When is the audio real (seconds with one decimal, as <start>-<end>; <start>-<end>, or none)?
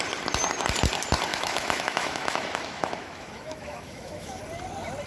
0.0-1.3; 4.4-5.1